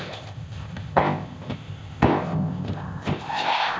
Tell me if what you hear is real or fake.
fake